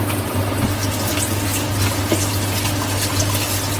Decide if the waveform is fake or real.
real